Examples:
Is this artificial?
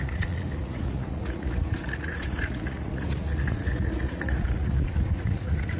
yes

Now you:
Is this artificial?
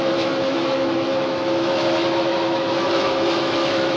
yes